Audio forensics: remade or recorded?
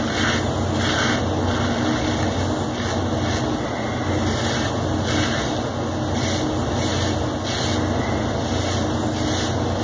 recorded